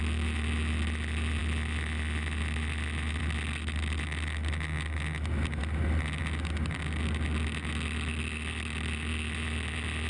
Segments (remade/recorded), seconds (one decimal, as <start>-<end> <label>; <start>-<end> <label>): 0.0-10.1 recorded